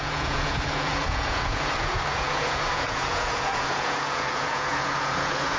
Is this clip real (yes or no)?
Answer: no